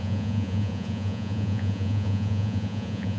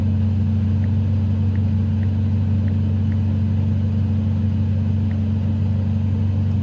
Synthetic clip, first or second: first